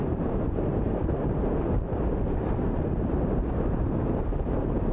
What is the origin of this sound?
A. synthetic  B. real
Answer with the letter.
A